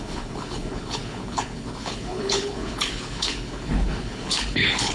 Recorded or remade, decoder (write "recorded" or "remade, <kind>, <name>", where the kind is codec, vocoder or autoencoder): remade, codec, HILCodec